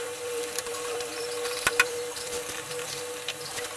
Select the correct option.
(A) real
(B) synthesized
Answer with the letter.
B